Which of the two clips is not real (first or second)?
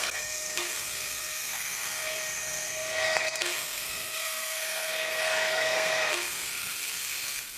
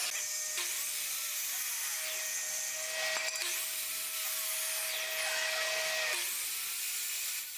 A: first